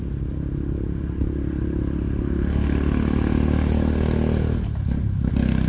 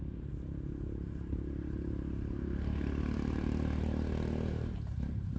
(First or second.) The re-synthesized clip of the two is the second